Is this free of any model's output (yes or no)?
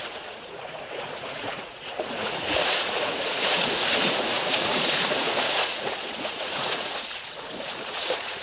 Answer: no